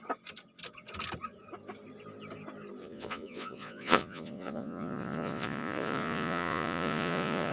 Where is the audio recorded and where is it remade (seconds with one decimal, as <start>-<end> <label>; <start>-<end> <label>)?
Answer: 0.0-2.8 recorded; 2.8-7.5 remade